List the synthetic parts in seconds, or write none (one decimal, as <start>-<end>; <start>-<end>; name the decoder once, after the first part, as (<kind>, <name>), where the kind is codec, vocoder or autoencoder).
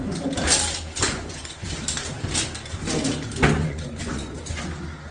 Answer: 1.0-1.7 (vocoder, Vocos); 3.6-4.4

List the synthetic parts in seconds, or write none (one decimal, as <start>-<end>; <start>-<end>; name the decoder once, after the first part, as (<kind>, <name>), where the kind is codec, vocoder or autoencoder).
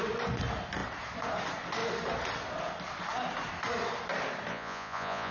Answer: 4.5-5.3 (vocoder, Vocos)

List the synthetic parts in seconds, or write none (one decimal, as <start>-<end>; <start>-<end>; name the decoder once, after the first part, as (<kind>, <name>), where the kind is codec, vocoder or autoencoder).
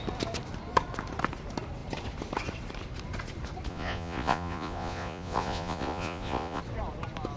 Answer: 3.7-6.6 (vocoder, Vocos)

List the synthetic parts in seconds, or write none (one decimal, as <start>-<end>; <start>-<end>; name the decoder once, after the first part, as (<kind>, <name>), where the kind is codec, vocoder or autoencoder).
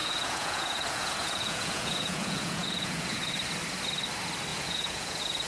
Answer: 0.0-3.3 (vocoder, Vocos); 4.5-5.5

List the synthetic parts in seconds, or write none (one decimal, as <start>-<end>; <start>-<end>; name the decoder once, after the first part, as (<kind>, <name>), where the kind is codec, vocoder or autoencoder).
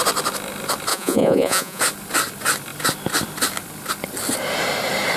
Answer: 0.9-1.8 (vocoder, Vocos)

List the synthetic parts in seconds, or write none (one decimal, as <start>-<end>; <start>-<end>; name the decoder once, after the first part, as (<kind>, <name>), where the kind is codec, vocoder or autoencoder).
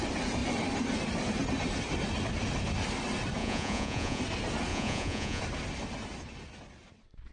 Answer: 3.4-4.2 (vocoder, Vocos); 4.7-5.4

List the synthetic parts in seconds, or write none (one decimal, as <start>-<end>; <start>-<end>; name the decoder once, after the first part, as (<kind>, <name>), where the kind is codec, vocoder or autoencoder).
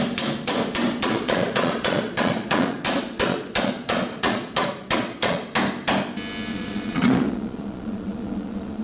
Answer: 1.0-5.4 (vocoder, Vocos); 6.5-8.8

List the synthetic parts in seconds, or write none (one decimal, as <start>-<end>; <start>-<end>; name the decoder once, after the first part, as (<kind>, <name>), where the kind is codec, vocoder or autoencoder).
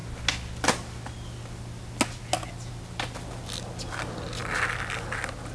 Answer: none